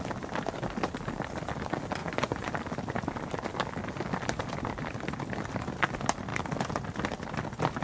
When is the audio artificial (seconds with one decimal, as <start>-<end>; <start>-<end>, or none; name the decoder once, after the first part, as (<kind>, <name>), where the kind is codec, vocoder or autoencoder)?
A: 2.0-2.5 (vocoder, Vocos)